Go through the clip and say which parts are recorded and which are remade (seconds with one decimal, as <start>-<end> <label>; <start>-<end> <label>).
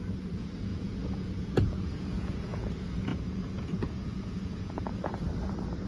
0.0-0.7 recorded; 0.7-2.7 remade; 2.7-3.1 recorded; 3.1-4.9 remade; 4.9-5.9 recorded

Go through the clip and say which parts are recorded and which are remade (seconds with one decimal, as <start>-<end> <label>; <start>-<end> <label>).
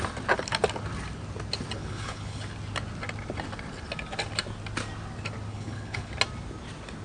0.0-1.8 recorded; 1.8-2.4 remade; 2.4-5.5 recorded; 5.5-6.1 remade; 6.1-7.0 recorded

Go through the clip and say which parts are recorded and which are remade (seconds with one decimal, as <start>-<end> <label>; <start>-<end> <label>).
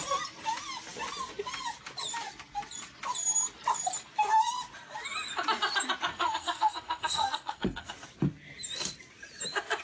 0.0-6.1 recorded; 6.1-7.9 remade; 7.9-9.8 recorded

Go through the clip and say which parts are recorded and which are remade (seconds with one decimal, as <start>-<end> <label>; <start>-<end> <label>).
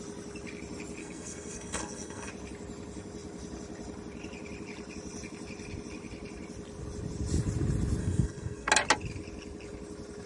0.0-1.0 recorded; 1.0-2.3 remade; 2.3-8.0 recorded; 8.0-8.7 remade; 8.7-10.3 recorded